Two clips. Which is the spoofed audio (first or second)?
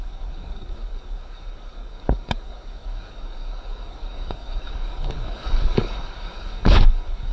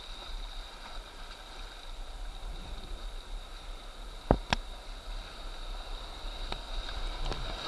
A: first